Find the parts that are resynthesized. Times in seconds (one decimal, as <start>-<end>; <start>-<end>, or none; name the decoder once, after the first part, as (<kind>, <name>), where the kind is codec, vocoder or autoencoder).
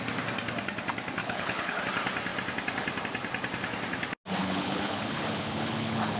1.2-1.8 (codec, HILCodec); 4.4-6.2